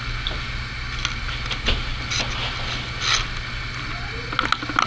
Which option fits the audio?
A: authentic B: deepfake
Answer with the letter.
A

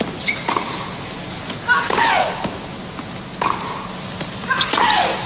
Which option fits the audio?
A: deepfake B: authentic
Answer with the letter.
B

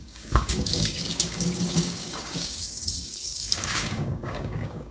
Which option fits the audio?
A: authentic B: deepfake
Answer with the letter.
B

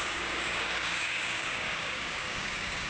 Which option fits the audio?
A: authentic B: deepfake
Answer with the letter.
B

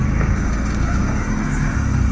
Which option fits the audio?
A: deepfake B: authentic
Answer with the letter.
A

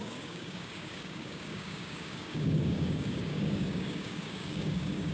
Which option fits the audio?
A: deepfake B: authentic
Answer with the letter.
A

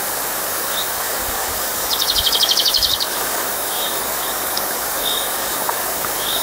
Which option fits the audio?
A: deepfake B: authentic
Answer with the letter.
A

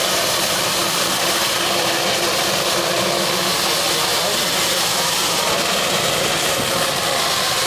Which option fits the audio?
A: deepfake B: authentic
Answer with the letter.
B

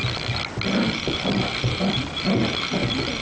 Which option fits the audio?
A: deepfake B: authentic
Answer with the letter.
B